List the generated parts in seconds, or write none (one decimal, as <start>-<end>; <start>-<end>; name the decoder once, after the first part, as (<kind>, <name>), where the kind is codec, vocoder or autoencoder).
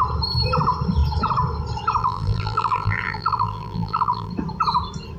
2.0-4.3 (vocoder, BigVGAN v2)